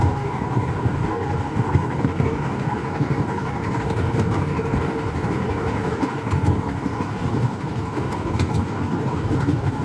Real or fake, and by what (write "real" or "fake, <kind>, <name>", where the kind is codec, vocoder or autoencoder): fake, codec, DAC